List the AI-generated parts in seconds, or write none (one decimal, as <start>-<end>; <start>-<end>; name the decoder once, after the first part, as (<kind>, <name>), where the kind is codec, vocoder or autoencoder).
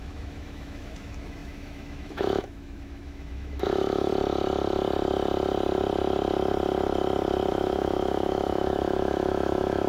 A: 0.0-4.1 (autoencoder, DAC-VAE); 7.5-9.9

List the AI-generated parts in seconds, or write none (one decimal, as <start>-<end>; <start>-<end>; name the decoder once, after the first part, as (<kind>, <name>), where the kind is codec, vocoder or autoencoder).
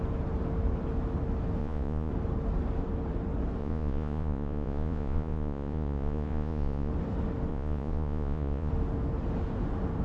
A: 1.6-2.1 (vocoder, Vocos); 3.6-6.9; 7.5-8.7